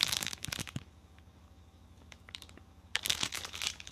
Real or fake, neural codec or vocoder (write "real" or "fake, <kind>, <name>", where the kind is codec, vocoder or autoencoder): fake, codec, DAC